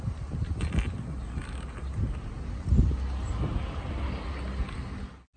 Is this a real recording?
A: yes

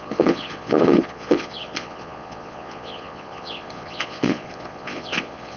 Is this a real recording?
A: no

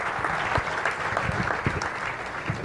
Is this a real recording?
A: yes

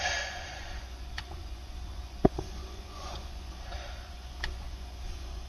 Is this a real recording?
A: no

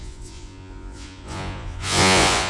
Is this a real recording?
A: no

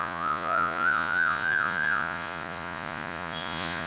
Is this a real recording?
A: no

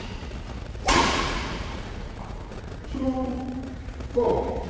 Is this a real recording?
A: no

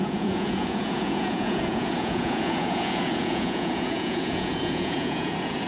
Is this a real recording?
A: no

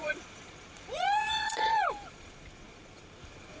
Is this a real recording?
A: no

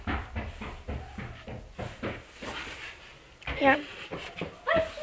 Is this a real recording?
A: yes